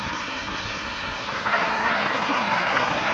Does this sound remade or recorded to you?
remade